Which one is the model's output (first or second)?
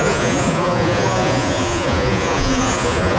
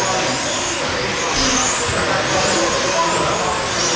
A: first